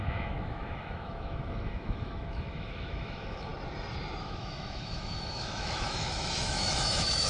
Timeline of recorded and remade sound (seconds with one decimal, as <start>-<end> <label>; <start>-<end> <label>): 0.0-3.5 remade; 3.5-4.2 recorded; 4.2-7.3 remade

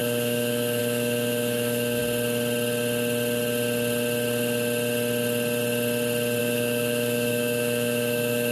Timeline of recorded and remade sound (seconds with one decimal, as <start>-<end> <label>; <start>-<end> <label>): 0.0-2.0 remade; 2.0-6.4 recorded; 6.4-8.5 remade